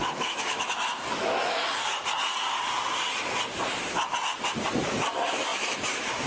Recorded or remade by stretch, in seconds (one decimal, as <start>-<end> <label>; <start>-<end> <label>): 0.0-1.6 remade; 1.6-5.0 recorded; 5.0-6.3 remade